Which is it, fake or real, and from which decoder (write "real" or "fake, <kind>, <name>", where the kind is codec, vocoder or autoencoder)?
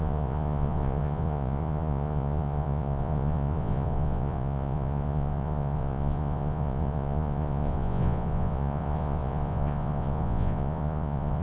fake, vocoder, Vocos